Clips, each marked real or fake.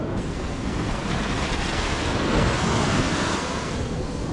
fake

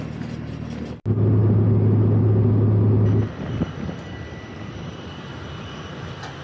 real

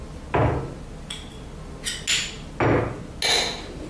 real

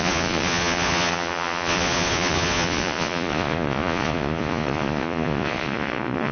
fake